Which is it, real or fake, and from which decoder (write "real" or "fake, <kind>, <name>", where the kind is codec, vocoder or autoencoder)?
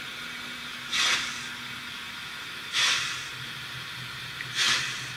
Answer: real